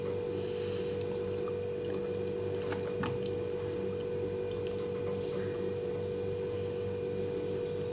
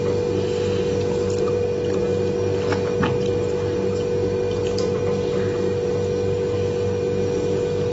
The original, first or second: second